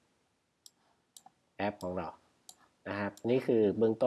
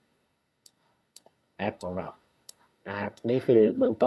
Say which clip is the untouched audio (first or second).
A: first